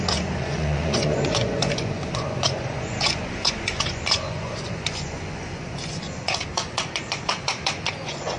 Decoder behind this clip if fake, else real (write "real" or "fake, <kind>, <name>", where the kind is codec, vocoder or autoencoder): fake, vocoder, Vocos